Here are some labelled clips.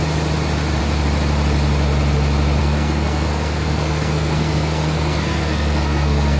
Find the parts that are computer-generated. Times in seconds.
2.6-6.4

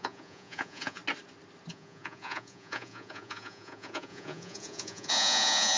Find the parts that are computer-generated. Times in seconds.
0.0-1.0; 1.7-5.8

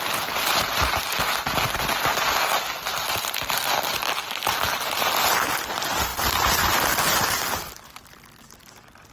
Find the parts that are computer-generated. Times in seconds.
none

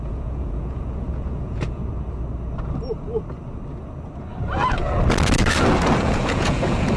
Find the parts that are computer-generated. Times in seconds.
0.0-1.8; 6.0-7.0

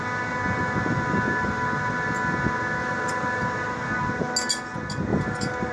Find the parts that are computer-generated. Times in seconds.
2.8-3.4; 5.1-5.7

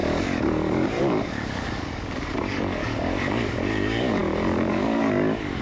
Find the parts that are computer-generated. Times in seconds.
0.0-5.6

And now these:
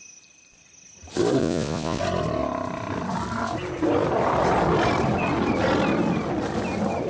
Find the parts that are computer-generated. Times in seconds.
1.4-2.0

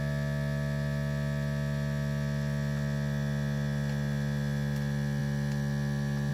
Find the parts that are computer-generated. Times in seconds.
none